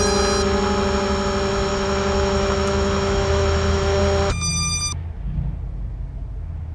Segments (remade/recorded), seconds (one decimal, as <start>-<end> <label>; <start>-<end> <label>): 0.0-1.7 recorded; 1.7-4.0 remade; 4.0-6.7 recorded